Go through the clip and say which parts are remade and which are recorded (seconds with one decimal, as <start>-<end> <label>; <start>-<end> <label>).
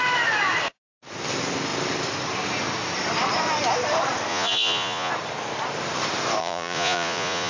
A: 0.0-4.3 recorded; 4.3-5.1 remade; 5.1-6.4 recorded; 6.4-7.5 remade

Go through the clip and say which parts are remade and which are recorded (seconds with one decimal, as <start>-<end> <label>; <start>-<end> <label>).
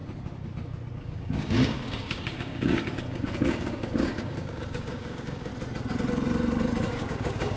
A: 0.0-1.0 recorded; 1.0-5.5 remade; 5.5-6.9 recorded; 6.9-7.6 remade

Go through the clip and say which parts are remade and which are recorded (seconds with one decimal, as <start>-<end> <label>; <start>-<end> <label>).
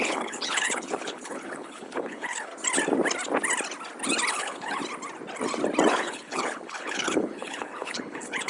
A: 0.0-2.5 remade; 2.5-4.3 recorded; 4.3-4.8 remade; 4.8-5.9 recorded; 5.9-8.5 remade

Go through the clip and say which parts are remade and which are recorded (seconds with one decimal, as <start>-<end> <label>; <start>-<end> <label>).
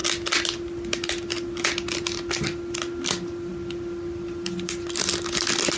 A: 0.0-5.8 recorded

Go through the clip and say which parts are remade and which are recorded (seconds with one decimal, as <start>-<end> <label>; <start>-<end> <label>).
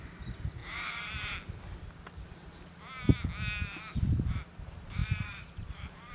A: 0.0-0.6 remade; 0.6-4.3 recorded; 4.3-6.1 remade